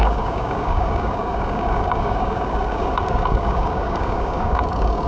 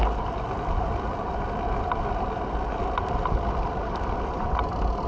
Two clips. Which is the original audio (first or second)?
second